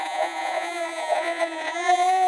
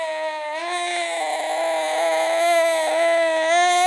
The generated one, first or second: first